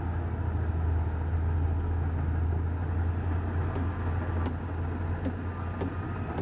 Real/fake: real